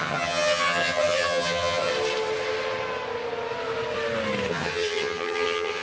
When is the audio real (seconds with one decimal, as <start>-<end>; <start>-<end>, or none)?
1.9-4.5